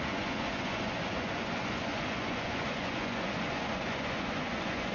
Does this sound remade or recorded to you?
remade